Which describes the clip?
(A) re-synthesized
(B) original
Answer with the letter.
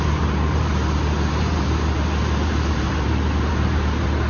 A